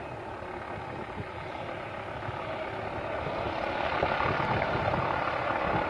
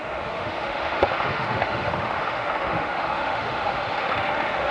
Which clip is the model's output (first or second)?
second